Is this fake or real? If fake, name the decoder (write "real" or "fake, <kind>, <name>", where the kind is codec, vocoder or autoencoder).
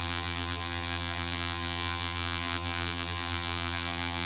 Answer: fake, vocoder, BigVGAN v2